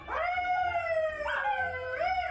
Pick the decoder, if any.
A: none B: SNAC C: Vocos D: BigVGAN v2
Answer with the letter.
D